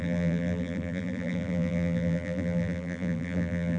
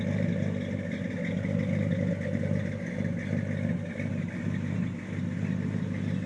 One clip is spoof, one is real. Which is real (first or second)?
second